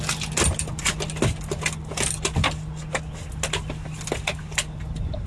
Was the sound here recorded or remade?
recorded